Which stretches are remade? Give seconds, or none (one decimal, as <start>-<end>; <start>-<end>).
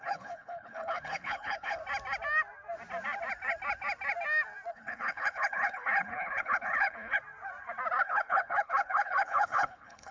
0.0-1.8; 4.7-7.2; 8.0-10.1